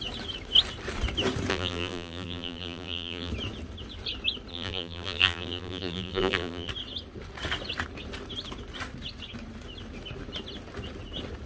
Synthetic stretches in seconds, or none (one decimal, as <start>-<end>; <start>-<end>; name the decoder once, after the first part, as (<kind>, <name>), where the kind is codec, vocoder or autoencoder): 1.5-3.3 (vocoder, BigVGAN v2); 4.5-6.7